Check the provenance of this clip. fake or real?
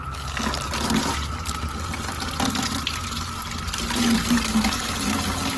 real